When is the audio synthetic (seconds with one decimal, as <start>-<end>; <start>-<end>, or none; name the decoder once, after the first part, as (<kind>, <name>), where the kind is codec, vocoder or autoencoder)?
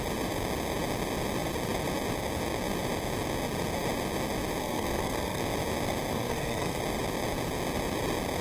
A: 4.6-5.4 (codec, SNAC); 6.1-6.8